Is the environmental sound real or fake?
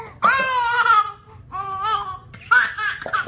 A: real